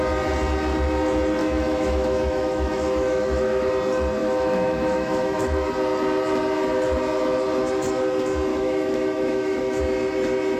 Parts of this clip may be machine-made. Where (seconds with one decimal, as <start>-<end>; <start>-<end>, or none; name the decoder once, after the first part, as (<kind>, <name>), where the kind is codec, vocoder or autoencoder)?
1.4-3.7 (autoencoder, DAC-VAE); 4.2-5.7; 8.5-9.8